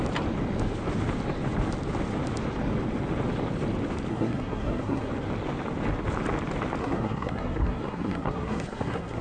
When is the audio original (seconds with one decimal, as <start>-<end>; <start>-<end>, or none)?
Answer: 0.0-4.1; 5.1-6.8